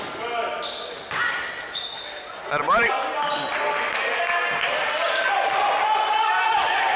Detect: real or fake real